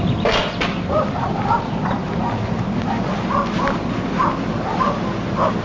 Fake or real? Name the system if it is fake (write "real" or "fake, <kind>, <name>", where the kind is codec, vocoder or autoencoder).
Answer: real